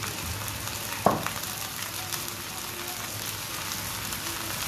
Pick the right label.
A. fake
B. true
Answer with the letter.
B